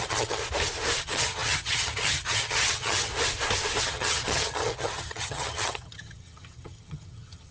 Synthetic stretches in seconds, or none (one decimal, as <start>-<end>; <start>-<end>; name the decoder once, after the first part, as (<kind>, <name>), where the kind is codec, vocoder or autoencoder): 0.0-0.4 (vocoder, HiFi-GAN); 1.0-3.1; 3.8-7.5